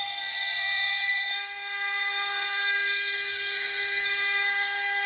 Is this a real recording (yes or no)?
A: no